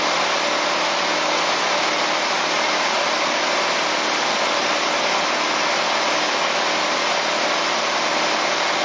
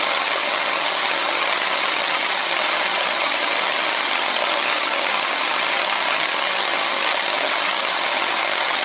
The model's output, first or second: second